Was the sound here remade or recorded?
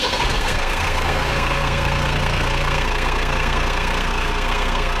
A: remade